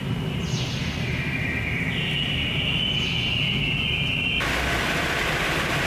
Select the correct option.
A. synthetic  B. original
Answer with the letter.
B